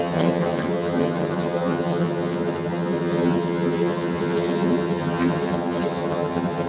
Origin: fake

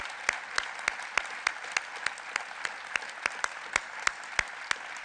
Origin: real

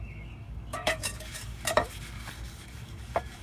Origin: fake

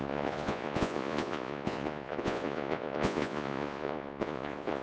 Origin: fake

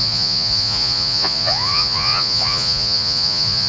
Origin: fake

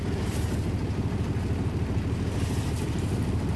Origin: fake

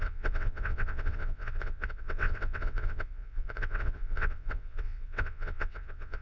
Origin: fake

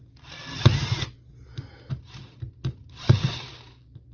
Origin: real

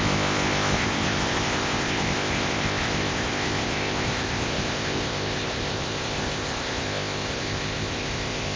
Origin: fake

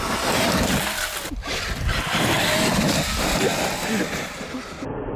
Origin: fake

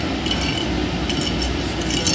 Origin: real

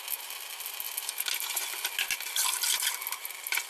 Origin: real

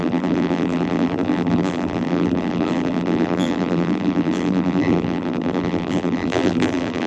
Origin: fake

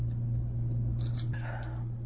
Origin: real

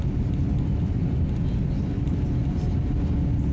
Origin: real